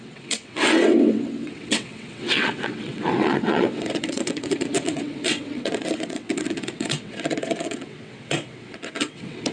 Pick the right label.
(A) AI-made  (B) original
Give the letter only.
A